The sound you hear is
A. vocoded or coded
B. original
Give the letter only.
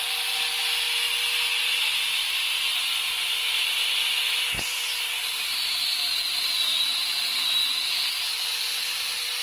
B